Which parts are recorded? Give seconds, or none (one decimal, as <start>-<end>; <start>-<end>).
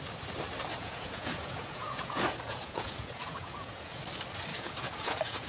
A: 0.0-0.7; 4.0-4.5